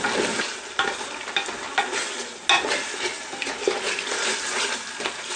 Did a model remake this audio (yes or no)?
no